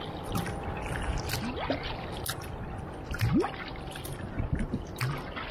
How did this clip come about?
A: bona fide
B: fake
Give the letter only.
A